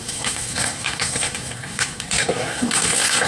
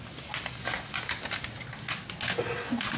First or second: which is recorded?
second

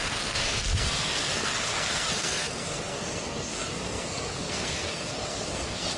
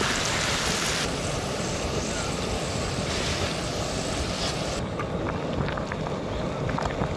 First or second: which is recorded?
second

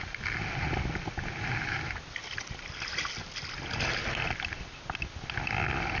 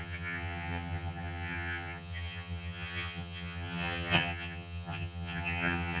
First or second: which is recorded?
first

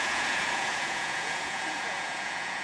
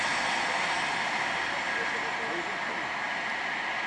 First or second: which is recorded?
second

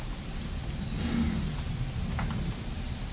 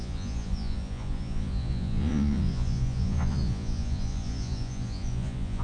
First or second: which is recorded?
first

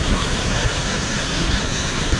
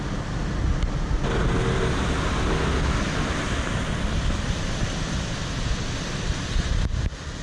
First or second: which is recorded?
second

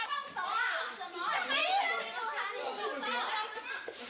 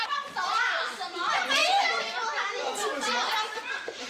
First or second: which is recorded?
first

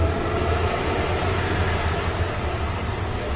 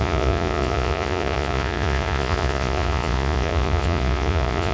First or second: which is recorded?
first